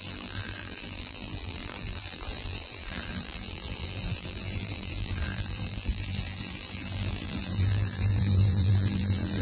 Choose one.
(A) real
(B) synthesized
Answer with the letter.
B